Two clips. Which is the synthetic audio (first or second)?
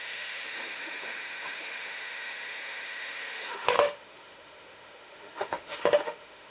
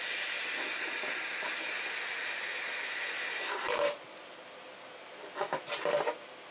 first